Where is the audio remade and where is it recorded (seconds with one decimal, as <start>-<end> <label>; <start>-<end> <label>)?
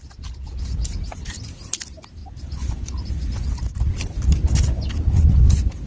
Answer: 0.0-5.9 recorded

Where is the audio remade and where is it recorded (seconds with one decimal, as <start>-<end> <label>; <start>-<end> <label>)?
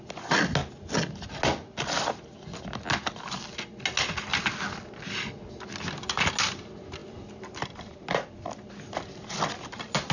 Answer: 0.0-10.1 recorded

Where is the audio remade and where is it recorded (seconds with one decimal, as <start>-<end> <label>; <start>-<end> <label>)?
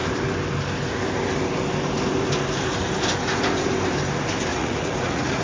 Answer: 0.0-4.5 recorded; 4.5-5.4 remade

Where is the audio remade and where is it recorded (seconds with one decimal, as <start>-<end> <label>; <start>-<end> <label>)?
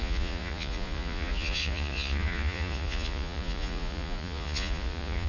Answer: 0.0-5.3 remade